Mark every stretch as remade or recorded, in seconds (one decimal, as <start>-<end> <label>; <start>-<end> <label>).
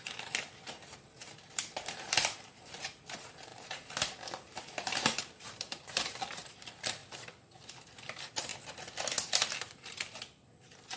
0.0-7.0 remade; 7.0-8.0 recorded; 8.0-8.5 remade; 8.5-9.3 recorded; 9.3-11.0 remade